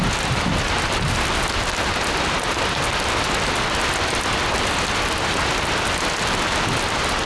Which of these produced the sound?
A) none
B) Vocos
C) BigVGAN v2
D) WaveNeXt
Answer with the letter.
A